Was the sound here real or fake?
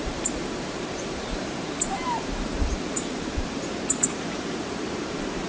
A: fake